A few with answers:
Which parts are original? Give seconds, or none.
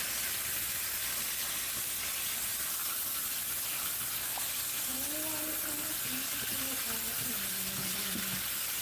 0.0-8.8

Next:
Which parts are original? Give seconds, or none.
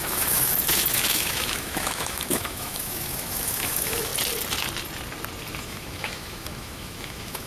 4.1-5.6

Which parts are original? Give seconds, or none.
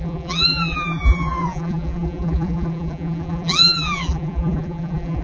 none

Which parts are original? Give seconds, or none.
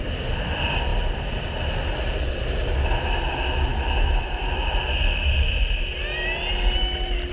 0.0-3.7; 4.5-7.3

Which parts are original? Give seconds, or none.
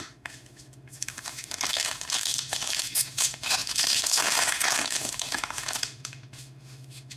none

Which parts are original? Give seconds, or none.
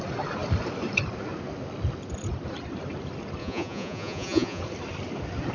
0.0-3.4; 4.6-5.5